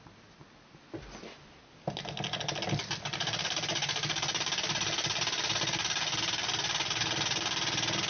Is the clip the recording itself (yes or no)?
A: yes